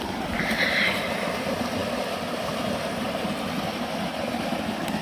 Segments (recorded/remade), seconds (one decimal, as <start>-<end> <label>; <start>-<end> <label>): 0.0-5.0 recorded